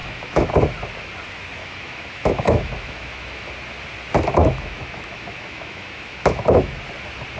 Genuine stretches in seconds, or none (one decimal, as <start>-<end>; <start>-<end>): 0.5-1.6; 3.5-4.4; 6.8-7.4